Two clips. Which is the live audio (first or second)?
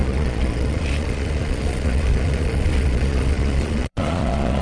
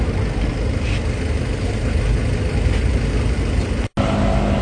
second